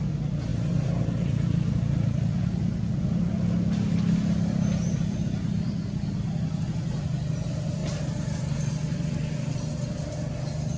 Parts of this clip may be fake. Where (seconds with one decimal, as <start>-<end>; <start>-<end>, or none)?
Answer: 7.8-8.7